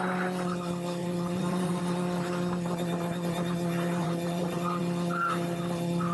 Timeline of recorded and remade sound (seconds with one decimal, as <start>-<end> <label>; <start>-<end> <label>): 0.0-1.0 recorded; 1.0-1.8 remade; 1.8-4.0 recorded; 4.0-4.8 remade; 4.8-6.1 recorded